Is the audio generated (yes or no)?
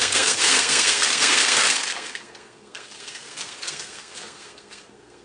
yes